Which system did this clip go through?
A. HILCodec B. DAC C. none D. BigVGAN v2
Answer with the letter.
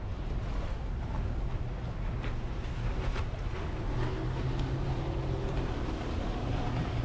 C